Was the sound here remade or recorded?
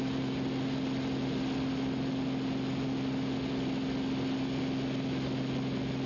recorded